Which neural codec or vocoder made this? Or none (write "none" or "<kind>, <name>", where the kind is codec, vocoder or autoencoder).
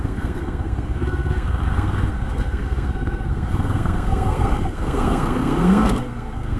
codec, SNAC